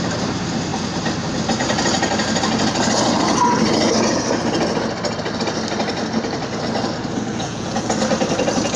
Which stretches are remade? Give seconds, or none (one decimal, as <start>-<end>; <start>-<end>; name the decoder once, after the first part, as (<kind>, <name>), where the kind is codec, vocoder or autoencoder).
7.3-7.9 (vocoder, Vocos)